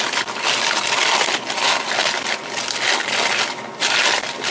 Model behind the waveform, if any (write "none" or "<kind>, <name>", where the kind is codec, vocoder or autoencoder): none